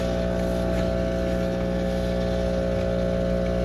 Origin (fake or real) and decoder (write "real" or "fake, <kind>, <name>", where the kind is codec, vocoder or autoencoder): real